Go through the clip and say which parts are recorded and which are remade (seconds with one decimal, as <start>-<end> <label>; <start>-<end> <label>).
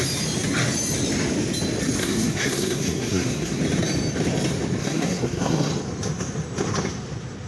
0.0-2.0 recorded; 2.0-3.6 remade; 3.6-4.8 recorded; 4.8-5.7 remade; 5.7-7.5 recorded